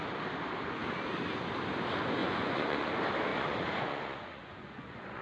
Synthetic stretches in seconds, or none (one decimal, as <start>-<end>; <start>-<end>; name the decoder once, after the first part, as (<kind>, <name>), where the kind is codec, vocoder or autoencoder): 2.2-2.9 (vocoder, Vocos); 3.3-5.2